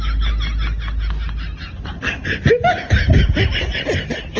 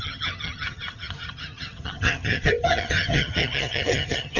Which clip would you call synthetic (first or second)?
second